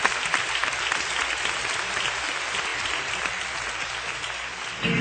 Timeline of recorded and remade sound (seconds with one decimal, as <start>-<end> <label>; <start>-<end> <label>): 0.0-2.7 recorded; 2.7-3.7 remade; 3.7-5.0 recorded